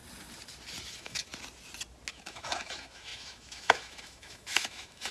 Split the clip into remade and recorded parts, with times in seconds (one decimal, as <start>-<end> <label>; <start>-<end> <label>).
0.0-0.9 recorded; 0.9-1.3 remade; 1.3-2.1 recorded; 2.1-5.1 remade